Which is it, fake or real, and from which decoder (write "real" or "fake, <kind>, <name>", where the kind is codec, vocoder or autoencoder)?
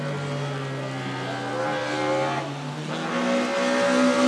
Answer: real